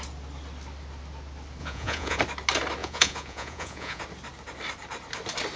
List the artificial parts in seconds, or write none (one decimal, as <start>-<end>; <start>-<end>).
1.6-2.2; 2.8-4.0